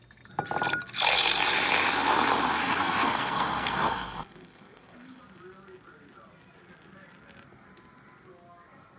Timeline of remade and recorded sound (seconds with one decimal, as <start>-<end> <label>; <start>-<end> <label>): 0.0-2.6 recorded; 2.6-5.2 remade; 5.2-9.0 recorded